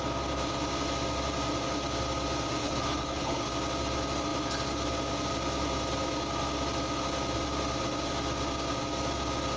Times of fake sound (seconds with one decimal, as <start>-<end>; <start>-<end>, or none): 2.6-3.5